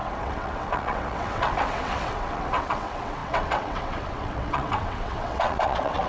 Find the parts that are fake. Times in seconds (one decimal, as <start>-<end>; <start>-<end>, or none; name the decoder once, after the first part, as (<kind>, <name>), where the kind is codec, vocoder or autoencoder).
0.0-6.1 (vocoder, WaveNeXt)